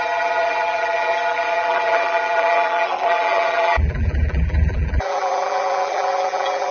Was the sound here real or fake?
fake